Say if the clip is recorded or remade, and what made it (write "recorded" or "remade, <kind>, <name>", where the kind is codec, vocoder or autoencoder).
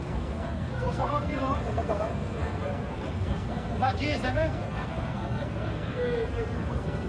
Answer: remade, codec, SNAC